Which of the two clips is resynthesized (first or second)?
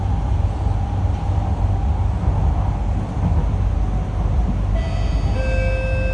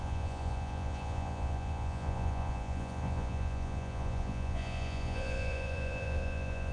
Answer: second